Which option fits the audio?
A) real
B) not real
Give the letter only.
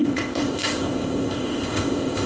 B